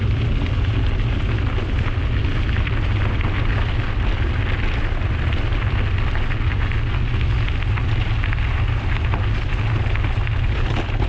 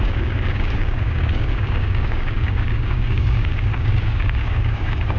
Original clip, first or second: first